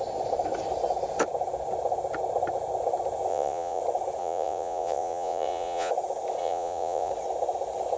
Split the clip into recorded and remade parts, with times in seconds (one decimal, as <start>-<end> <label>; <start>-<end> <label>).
0.0-3.3 recorded; 3.3-3.8 remade; 3.8-4.2 recorded; 4.2-5.9 remade; 5.9-6.4 recorded; 6.4-7.1 remade; 7.1-8.0 recorded